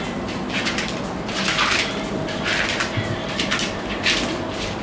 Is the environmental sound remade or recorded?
remade